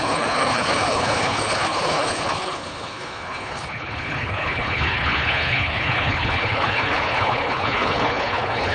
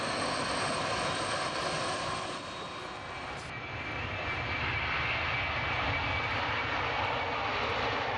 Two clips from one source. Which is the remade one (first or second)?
first